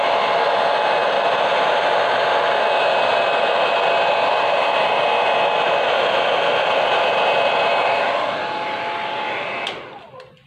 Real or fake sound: real